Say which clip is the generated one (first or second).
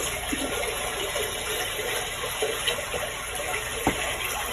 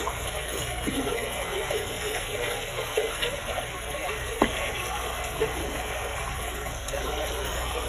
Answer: second